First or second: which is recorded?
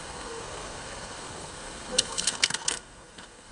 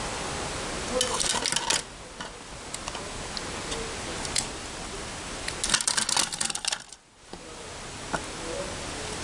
second